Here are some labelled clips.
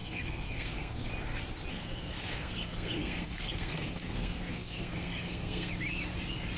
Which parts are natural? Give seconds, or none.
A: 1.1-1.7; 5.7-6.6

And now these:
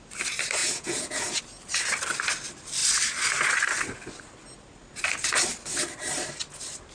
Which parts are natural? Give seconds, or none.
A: 0.0-0.6; 1.4-6.9

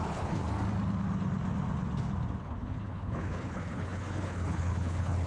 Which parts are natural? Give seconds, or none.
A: 0.4-2.4